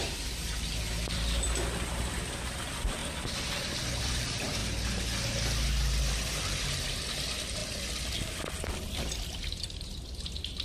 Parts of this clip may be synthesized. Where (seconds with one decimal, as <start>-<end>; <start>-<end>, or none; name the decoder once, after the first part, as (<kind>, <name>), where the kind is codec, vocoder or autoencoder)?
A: 0.0-3.0 (vocoder, BigVGAN v2); 4.0-4.6; 6.0-10.6